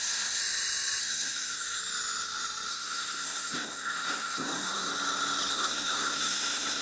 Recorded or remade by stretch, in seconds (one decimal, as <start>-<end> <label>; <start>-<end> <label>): 0.0-0.4 remade; 0.4-1.0 recorded; 1.0-1.8 remade; 1.8-2.7 recorded; 2.7-4.9 remade; 4.9-5.5 recorded; 5.5-6.8 remade